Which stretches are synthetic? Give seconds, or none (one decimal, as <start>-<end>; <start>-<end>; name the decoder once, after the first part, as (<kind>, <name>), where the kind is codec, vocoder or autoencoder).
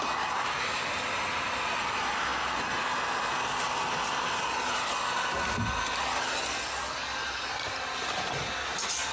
none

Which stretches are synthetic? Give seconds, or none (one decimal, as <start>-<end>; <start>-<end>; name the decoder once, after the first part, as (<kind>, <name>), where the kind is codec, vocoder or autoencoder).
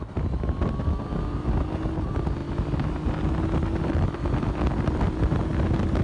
none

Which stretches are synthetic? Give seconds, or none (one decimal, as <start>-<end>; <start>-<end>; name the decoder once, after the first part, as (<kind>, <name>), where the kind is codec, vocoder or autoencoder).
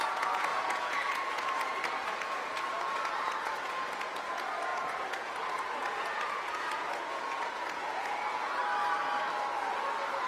0.0-8.6 (vocoder, Vocos)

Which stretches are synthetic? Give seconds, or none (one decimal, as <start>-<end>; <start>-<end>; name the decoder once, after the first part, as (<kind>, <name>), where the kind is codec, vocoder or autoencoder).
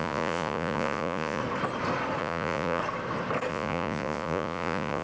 0.0-1.4 (vocoder, Vocos); 2.2-2.8; 3.5-5.0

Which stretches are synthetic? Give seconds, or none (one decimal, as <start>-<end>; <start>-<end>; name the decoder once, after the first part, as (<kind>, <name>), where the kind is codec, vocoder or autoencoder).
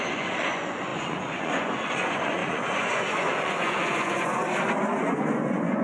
0.0-4.4 (vocoder, Vocos); 5.0-5.8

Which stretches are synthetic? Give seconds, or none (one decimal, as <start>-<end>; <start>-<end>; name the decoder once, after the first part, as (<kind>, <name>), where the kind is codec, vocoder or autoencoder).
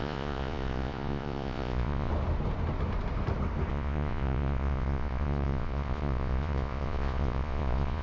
0.0-2.1 (vocoder, Vocos); 3.7-8.0